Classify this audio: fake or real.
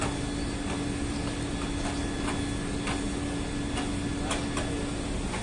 real